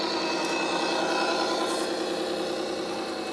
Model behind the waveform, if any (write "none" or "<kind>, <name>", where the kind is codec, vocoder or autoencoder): none